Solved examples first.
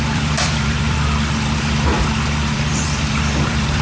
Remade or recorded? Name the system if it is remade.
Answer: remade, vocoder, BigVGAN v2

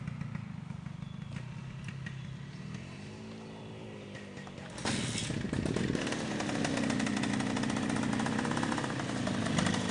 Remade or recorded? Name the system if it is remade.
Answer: recorded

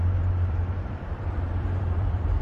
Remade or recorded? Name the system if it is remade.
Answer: remade, vocoder, BigVGAN v2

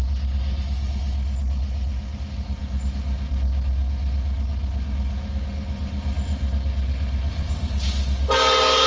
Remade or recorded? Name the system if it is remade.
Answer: recorded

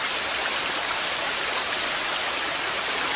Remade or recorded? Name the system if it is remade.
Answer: remade, vocoder, BigVGAN v2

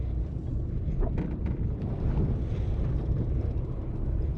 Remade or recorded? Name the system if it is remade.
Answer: remade, vocoder, BigVGAN v2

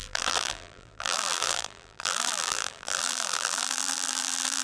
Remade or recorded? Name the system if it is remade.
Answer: remade, vocoder, BigVGAN v2